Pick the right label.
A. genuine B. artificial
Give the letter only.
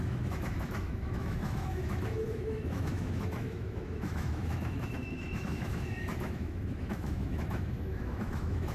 B